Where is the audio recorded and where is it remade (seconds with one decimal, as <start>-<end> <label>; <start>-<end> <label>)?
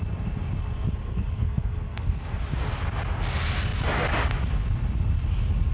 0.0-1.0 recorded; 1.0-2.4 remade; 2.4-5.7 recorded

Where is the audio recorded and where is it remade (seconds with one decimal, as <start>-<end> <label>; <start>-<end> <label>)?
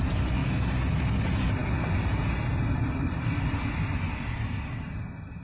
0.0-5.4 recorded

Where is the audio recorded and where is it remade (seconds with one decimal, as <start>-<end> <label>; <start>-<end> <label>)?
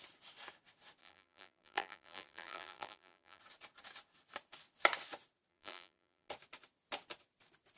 0.0-1.0 recorded; 1.0-3.4 remade; 3.4-5.5 recorded; 5.5-6.3 remade; 6.3-7.8 recorded